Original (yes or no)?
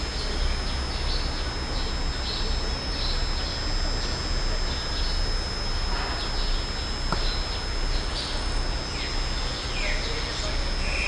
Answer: yes